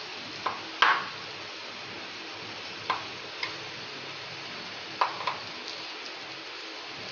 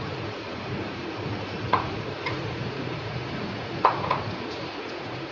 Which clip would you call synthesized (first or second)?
second